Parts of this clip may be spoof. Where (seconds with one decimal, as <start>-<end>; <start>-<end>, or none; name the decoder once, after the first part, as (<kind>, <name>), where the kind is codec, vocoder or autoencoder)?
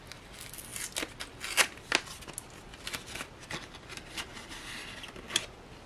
none